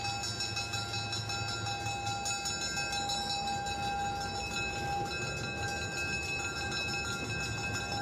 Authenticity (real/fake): real